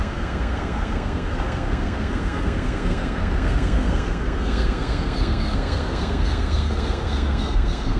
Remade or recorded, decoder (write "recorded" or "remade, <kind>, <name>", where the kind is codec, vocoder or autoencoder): remade, codec, SNAC